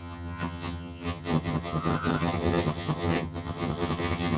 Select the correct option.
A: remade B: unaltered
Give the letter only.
A